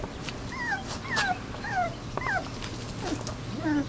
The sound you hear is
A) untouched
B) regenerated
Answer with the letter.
A